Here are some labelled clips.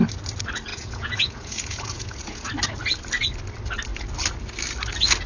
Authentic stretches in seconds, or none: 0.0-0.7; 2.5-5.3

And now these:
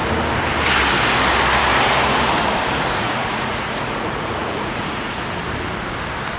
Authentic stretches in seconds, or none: 0.0-3.0; 5.2-6.4